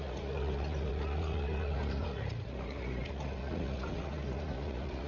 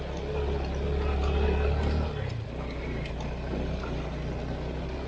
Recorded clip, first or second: second